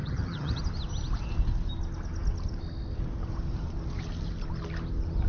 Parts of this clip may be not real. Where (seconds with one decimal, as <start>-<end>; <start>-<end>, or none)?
0.0-0.6